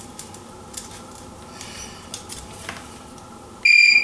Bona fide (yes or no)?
yes